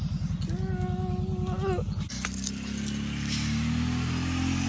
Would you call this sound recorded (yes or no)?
yes